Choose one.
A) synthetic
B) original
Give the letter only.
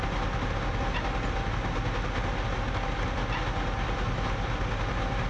B